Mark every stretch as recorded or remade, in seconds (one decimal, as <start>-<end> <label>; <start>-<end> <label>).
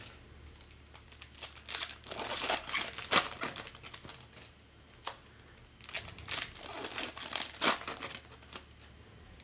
0.0-9.4 recorded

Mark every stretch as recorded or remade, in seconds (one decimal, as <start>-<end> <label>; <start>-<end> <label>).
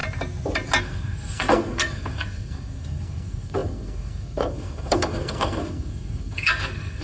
0.0-0.8 recorded; 0.8-7.0 remade